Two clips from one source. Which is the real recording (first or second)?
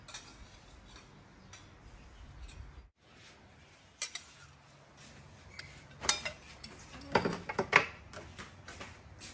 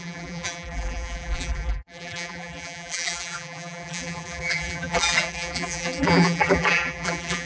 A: first